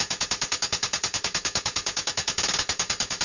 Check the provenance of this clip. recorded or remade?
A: remade